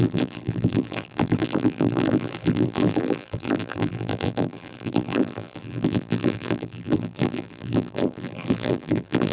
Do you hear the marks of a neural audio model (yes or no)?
yes